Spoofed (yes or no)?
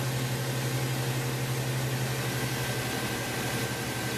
no